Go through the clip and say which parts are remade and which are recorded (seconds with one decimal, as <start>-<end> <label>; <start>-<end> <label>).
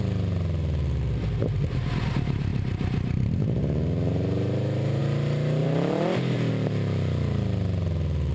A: 0.0-2.5 recorded; 2.5-5.0 remade; 5.0-5.6 recorded; 5.6-6.5 remade; 6.5-8.3 recorded